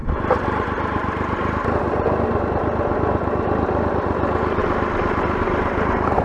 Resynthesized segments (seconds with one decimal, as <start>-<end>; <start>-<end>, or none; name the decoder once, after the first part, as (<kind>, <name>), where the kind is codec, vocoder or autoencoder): none